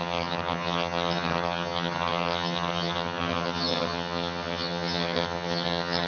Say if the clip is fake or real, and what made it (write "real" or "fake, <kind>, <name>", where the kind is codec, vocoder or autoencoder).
fake, vocoder, HiFi-GAN